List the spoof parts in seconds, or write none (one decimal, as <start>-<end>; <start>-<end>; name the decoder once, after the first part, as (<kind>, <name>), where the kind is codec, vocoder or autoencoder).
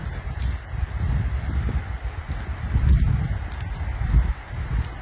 0.0-3.0 (vocoder, BigVGAN v2)